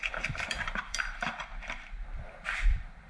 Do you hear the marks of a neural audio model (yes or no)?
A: yes